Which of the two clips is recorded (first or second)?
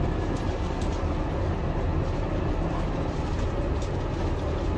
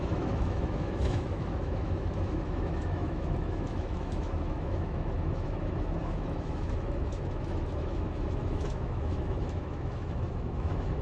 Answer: first